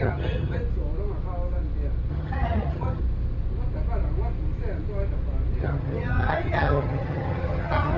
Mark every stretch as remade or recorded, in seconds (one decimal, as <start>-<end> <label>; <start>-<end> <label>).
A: 0.0-0.6 remade; 0.6-2.1 recorded; 2.1-3.0 remade; 3.0-5.6 recorded; 5.6-8.0 remade